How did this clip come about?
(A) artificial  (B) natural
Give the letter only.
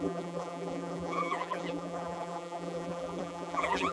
A